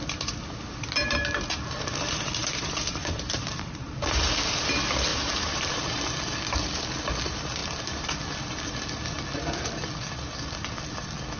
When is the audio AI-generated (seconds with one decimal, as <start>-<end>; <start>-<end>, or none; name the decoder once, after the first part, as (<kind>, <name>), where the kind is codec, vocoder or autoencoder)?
2.4-4.2 (vocoder, BigVGAN v2); 5.1-6.0

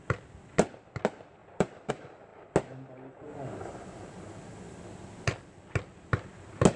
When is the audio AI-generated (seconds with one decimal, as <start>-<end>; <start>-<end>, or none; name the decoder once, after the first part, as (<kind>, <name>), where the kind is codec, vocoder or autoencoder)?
1.4-1.9 (vocoder, BigVGAN v2)